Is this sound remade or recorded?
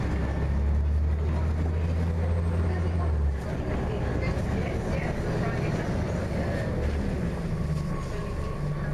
recorded